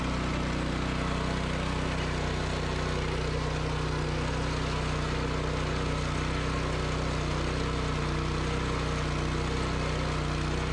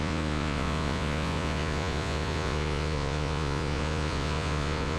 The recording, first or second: first